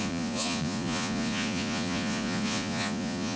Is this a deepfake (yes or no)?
yes